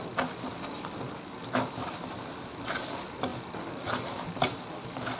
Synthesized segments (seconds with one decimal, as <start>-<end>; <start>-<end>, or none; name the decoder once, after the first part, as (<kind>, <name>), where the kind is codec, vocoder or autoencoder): none